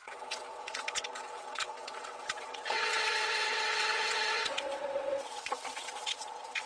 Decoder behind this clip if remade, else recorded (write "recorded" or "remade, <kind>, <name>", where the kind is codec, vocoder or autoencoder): remade, vocoder, WaveNeXt